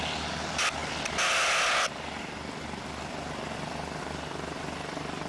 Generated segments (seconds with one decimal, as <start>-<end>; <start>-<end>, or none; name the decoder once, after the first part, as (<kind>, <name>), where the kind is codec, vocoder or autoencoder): none